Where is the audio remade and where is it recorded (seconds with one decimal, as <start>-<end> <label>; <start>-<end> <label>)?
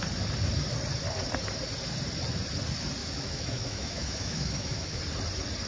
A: 0.0-3.0 recorded; 3.0-5.0 remade; 5.0-5.7 recorded